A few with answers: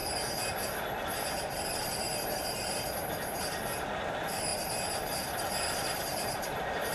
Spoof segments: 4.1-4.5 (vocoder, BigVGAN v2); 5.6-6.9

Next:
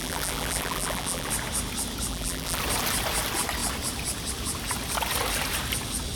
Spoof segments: 0.0-1.3 (vocoder, BigVGAN v2); 2.1-2.6